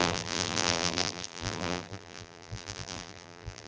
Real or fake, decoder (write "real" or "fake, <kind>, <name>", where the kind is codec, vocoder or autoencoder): fake, vocoder, BigVGAN v2